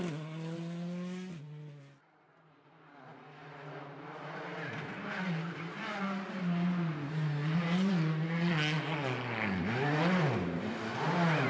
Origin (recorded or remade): recorded